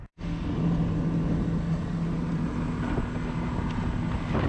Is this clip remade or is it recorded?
recorded